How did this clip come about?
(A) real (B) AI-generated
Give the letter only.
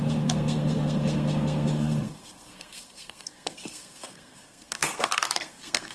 B